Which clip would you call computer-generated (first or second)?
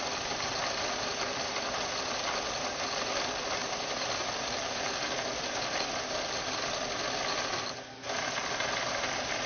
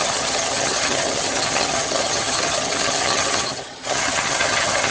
second